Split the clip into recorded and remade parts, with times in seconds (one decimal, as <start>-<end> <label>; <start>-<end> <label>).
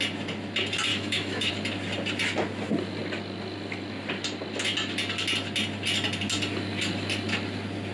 0.0-0.9 recorded; 0.9-1.5 remade; 1.5-7.9 recorded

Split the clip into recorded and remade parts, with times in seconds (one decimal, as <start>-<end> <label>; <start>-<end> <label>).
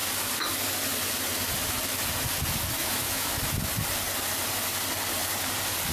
0.0-2.8 recorded; 2.8-3.3 remade; 3.3-5.9 recorded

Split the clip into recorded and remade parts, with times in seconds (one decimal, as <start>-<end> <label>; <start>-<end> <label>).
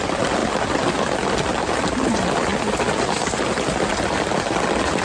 0.0-5.0 recorded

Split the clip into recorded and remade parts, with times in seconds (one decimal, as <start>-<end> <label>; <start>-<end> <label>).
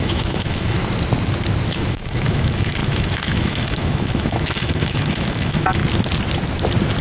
0.0-0.8 remade; 0.8-1.7 recorded; 1.7-5.8 remade; 5.8-7.0 recorded